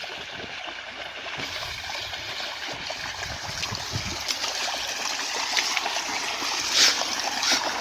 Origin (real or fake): real